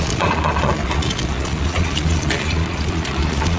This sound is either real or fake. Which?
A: fake